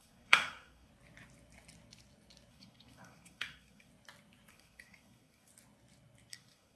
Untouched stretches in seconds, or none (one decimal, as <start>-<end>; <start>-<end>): 0.9-2.5; 3.9-4.5; 5.5-6.3